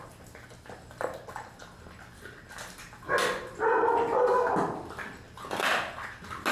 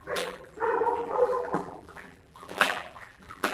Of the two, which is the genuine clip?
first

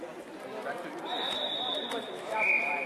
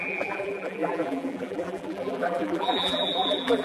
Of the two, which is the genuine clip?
first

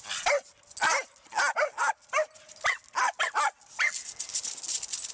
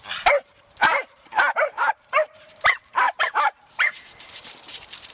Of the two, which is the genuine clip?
first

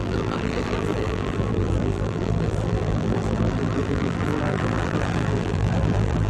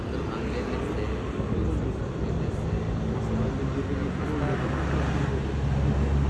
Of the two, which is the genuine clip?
second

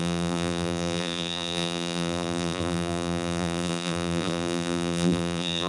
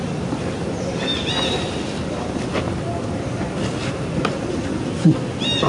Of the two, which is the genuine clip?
second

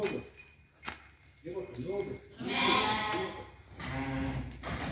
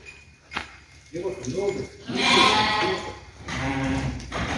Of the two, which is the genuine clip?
first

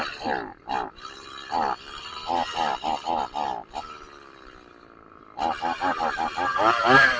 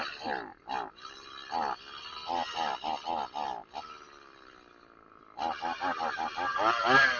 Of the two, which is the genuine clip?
second